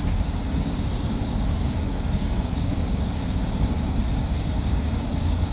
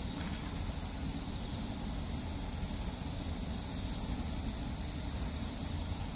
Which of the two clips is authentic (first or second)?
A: second